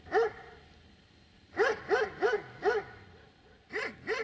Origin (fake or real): real